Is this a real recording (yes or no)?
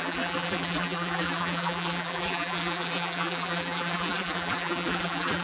no